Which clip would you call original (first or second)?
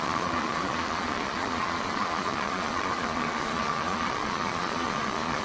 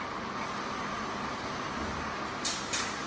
second